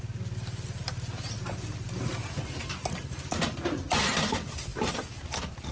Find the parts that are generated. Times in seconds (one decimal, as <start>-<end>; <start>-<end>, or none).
none